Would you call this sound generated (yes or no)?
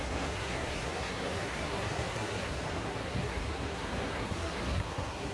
yes